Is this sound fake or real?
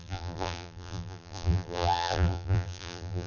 fake